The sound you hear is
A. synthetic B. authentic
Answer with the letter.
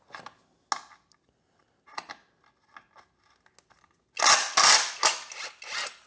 B